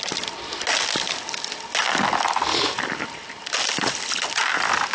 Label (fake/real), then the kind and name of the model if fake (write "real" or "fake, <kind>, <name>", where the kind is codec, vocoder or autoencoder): real